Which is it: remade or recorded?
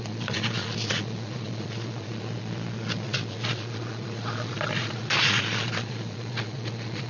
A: remade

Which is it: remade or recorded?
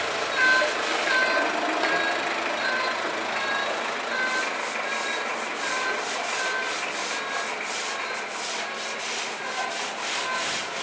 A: recorded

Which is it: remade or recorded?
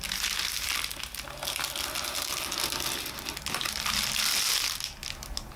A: recorded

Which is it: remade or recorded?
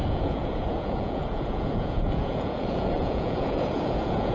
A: remade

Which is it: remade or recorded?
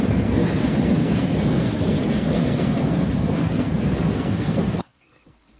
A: remade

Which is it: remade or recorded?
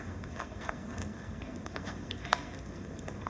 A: remade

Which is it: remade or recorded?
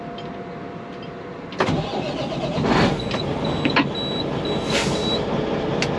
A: recorded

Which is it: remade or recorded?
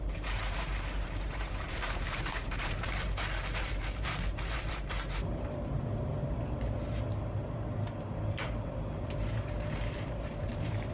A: remade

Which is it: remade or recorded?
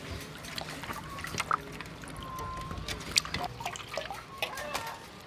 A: recorded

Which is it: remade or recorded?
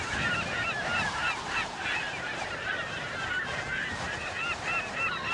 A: recorded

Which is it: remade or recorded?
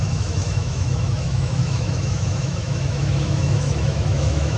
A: remade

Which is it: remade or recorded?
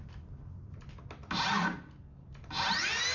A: recorded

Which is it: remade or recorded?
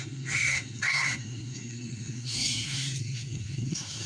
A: remade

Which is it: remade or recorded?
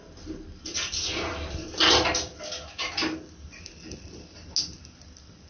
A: recorded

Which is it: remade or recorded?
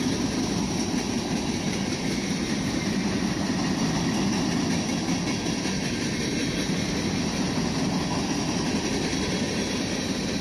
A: recorded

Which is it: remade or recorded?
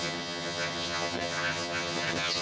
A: remade